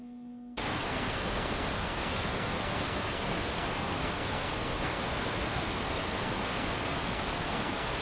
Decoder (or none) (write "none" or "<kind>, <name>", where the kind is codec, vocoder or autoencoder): codec, SNAC